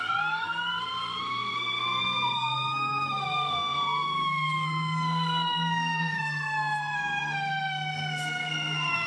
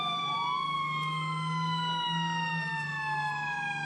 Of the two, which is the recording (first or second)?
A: second